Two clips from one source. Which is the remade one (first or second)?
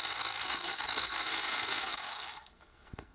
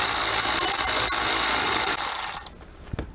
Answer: first